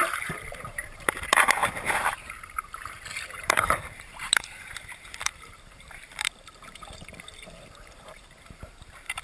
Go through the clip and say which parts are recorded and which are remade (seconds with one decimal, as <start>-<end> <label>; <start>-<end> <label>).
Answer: 0.0-9.2 remade